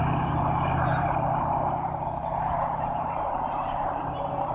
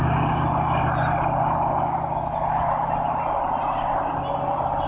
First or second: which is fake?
first